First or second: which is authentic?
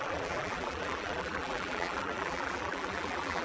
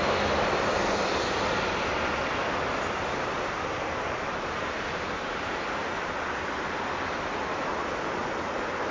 second